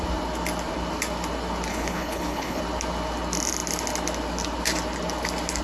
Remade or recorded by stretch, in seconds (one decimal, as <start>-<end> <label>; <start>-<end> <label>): 0.0-1.7 recorded; 1.7-2.6 remade; 2.6-5.6 recorded